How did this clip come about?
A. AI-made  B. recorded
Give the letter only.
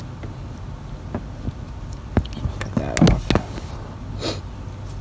B